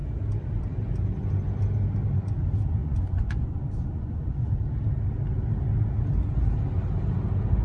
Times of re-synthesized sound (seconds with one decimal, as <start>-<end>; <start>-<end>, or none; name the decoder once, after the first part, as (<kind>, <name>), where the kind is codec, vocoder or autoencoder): 2.8-4.5 (vocoder, Vocos)